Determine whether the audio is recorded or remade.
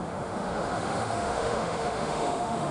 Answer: remade